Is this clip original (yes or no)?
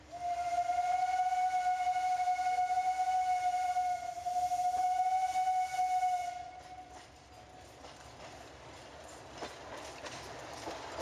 yes